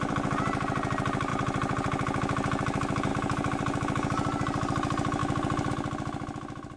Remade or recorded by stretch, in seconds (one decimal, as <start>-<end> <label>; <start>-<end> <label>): 0.0-6.8 recorded